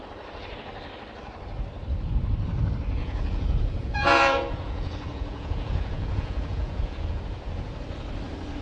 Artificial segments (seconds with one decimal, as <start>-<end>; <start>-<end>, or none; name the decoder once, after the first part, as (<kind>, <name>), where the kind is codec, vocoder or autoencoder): 3.0-7.2 (vocoder, Vocos)

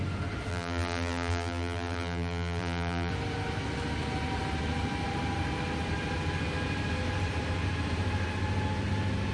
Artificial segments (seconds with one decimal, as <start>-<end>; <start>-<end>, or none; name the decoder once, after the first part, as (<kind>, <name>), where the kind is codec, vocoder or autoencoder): 0.5-3.1 (vocoder, BigVGAN v2)